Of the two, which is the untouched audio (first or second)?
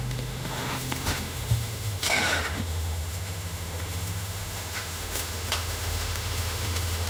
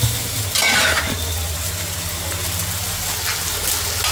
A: second